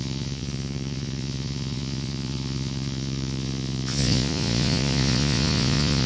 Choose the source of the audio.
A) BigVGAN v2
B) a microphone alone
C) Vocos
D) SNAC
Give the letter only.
C